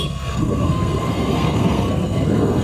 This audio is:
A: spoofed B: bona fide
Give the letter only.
A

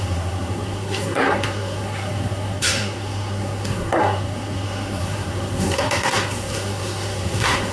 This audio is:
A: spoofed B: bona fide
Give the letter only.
A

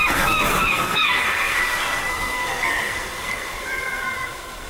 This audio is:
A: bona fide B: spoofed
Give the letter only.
B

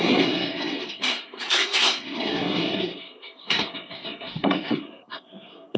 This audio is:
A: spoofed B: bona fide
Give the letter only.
A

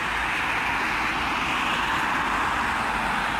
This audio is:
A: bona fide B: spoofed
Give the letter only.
A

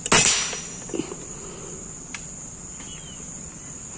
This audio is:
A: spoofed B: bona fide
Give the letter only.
B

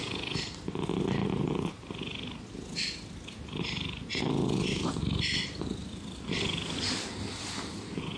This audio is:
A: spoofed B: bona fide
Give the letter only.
B